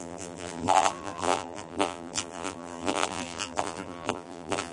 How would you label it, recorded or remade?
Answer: remade